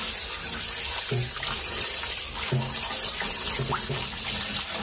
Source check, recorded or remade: recorded